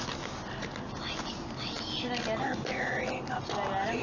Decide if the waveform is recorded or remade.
recorded